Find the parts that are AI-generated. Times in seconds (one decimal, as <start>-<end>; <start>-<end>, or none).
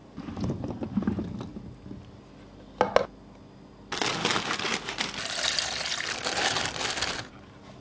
0.0-0.7; 4.2-5.0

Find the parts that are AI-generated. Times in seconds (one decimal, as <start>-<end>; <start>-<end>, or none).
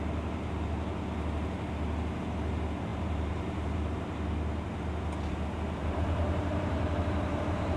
2.9-3.8; 5.8-7.8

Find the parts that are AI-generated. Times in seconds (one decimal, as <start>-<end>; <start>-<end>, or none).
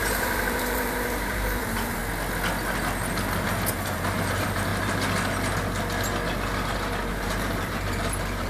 0.0-2.0; 3.7-4.7; 7.1-8.5